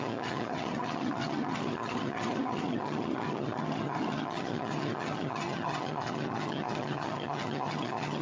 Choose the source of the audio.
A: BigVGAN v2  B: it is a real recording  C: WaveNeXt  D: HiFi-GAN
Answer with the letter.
D